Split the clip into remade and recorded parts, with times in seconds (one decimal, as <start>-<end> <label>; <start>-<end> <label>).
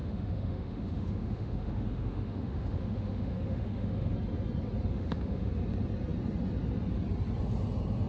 0.0-4.1 remade; 4.1-4.9 recorded; 4.9-5.5 remade; 5.5-8.1 recorded